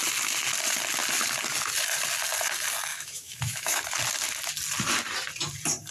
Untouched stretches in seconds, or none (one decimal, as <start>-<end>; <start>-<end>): 0.0-2.9; 3.8-5.9